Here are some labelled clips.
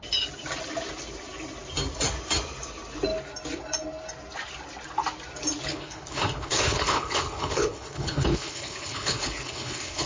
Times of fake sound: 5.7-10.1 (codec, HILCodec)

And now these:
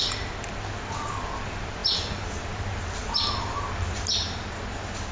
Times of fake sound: none

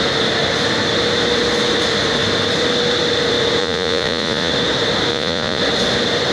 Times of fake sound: 3.6-4.5 (vocoder, Vocos); 5.1-5.6

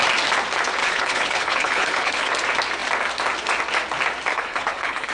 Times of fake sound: 0.8-2.3 (codec, HILCodec); 4.3-5.1

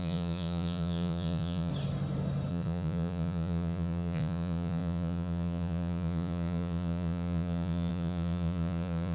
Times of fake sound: 0.0-1.7 (vocoder, Vocos); 2.5-9.1

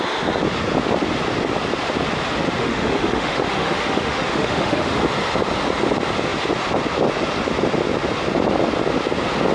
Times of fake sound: 2.6-5.0 (autoencoder, DAC-VAE)